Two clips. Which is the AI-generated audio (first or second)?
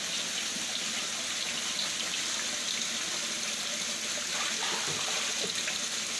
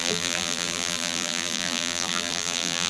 second